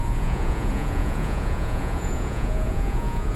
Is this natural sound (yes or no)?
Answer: no